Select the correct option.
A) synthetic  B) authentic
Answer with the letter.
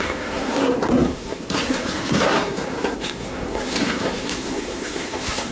A